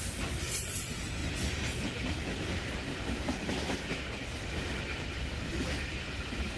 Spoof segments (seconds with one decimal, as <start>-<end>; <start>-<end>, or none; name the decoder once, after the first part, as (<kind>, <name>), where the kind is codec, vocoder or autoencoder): none